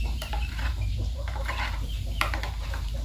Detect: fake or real fake